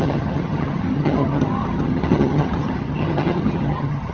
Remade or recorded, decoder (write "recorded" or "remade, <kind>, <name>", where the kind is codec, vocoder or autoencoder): remade, vocoder, HiFi-GAN